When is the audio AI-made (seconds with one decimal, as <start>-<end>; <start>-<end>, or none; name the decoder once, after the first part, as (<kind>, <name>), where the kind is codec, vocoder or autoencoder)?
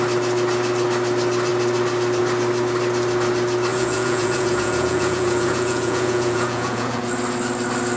3.7-7.0 (vocoder, Vocos)